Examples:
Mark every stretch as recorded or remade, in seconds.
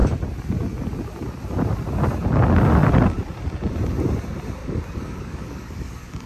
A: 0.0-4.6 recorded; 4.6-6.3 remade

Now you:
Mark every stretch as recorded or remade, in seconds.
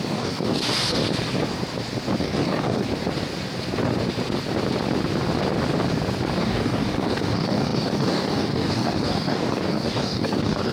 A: 0.0-1.0 remade; 1.0-2.2 recorded; 2.2-2.9 remade; 2.9-6.4 recorded; 6.4-10.7 remade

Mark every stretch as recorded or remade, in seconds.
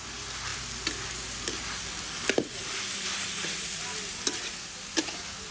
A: 0.0-5.5 recorded